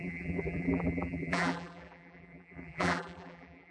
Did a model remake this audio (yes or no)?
yes